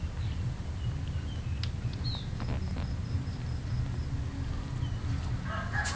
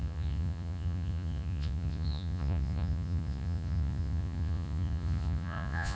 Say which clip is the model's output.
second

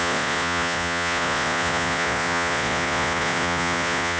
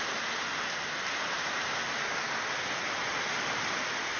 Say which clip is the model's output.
first